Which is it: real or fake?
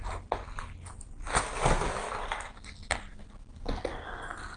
real